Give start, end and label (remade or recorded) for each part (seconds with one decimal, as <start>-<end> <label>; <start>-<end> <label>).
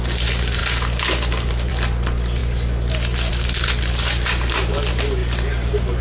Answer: 0.0-6.0 recorded